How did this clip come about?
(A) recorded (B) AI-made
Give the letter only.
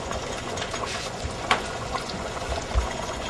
B